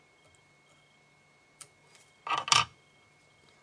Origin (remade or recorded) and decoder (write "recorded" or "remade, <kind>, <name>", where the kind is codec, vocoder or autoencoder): recorded